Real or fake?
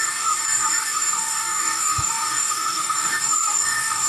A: fake